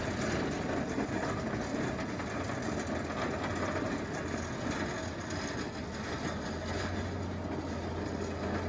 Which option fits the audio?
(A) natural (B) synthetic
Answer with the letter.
A